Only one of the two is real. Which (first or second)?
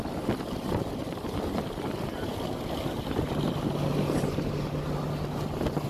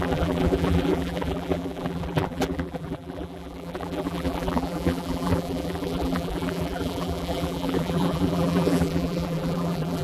first